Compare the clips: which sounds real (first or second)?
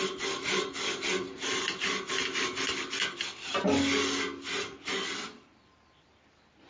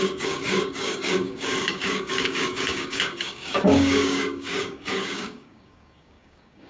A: first